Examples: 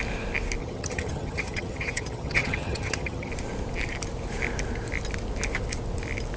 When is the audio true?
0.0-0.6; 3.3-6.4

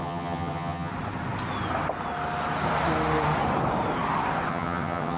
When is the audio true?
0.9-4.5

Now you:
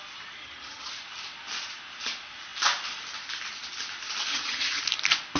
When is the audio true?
0.0-0.4; 0.9-4.3; 4.8-5.4